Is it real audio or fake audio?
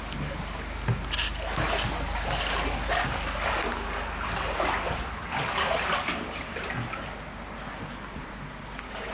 real